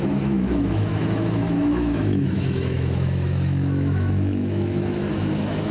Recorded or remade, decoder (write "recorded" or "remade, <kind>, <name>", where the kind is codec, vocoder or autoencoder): remade, autoencoder, DAC-VAE